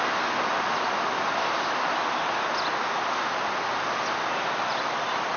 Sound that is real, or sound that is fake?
real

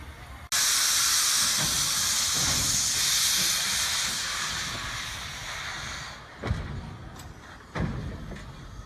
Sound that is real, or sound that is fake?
real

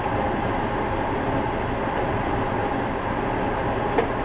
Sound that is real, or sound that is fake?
real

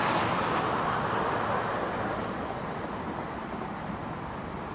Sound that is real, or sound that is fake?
real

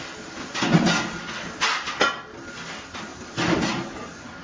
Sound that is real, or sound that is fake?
real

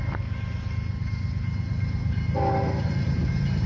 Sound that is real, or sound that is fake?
fake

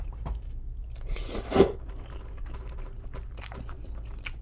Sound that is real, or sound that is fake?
fake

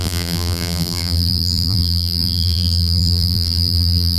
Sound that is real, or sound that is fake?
fake